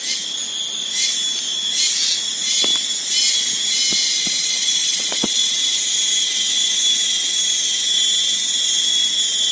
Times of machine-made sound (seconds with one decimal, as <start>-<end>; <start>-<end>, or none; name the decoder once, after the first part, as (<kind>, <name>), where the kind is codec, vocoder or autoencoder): 4.4-5.4 (vocoder, Vocos)